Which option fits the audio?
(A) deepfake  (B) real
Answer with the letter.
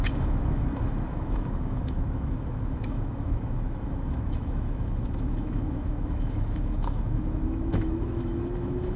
A